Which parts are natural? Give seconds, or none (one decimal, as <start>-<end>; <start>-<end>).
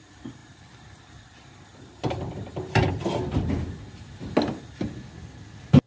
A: 0.0-5.9